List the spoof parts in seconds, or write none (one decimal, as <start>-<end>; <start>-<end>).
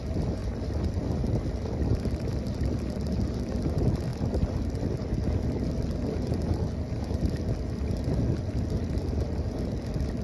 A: none